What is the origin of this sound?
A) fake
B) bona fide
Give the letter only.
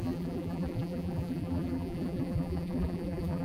A